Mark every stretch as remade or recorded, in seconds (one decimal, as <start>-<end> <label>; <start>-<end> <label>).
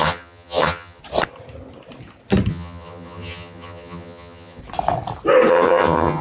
0.0-1.0 remade; 1.0-2.5 recorded; 2.5-4.6 remade; 4.6-5.5 recorded; 5.5-6.2 remade